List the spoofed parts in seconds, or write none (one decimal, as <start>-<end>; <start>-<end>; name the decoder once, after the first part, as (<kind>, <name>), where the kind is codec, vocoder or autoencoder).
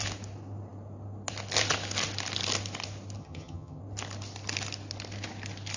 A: 3.2-3.8 (vocoder, HiFi-GAN)